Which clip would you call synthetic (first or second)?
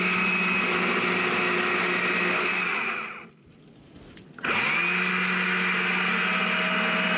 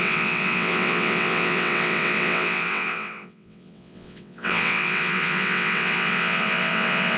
second